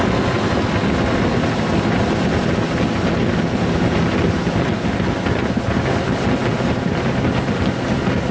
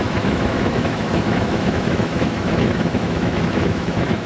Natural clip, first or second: first